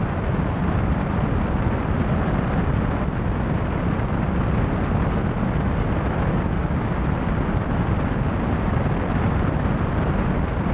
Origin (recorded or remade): recorded